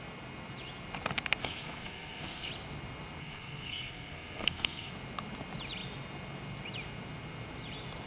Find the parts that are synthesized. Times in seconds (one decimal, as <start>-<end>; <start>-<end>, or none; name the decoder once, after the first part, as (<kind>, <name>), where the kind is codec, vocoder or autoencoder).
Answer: 1.4-2.5 (codec, SNAC); 3.2-4.9